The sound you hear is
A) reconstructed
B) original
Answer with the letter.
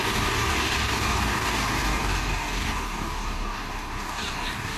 A